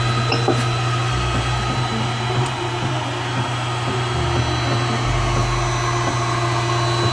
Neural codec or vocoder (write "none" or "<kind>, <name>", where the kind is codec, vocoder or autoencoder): none